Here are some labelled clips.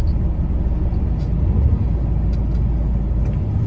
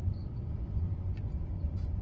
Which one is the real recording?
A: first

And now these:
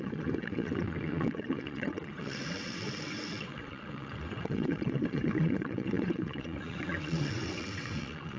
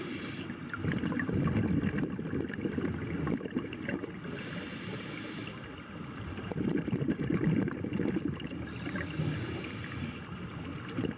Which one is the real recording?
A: second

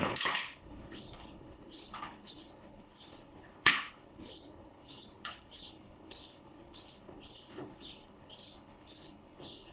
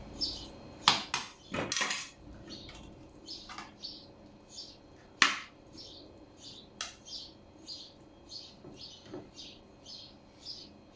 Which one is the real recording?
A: second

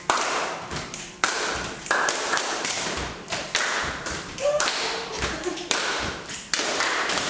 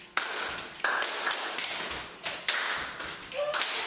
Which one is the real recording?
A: second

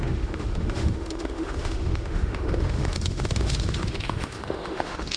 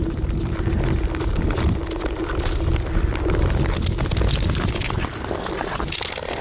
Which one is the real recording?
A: second